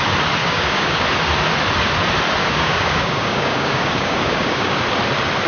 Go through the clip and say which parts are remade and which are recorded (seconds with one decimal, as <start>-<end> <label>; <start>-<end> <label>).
0.0-0.4 recorded; 0.4-1.0 remade; 1.0-2.4 recorded; 2.4-4.8 remade; 4.8-5.5 recorded